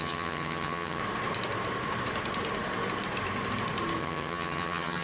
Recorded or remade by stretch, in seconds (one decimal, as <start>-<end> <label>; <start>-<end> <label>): 0.0-1.0 remade; 1.0-4.0 recorded; 4.0-5.0 remade